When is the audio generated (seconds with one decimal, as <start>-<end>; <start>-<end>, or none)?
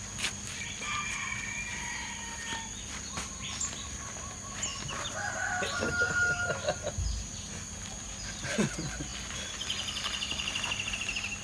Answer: none